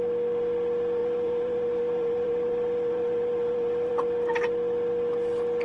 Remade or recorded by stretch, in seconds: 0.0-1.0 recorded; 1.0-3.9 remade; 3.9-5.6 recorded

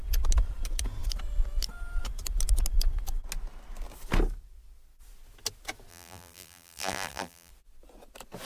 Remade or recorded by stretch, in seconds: 0.0-5.9 recorded; 5.9-7.5 remade; 7.5-8.4 recorded

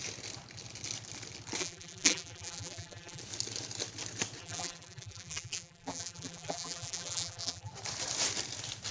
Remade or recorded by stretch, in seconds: 0.0-1.6 recorded; 1.6-3.2 remade; 3.2-4.4 recorded; 4.4-7.7 remade; 7.7-8.9 recorded

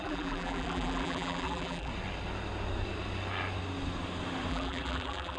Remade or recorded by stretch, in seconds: 0.0-1.9 remade; 1.9-4.5 recorded; 4.5-5.4 remade